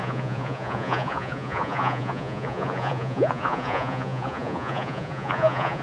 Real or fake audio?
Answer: fake